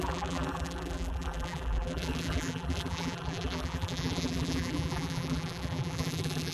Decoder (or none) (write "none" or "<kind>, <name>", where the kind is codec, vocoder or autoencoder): vocoder, BigVGAN v2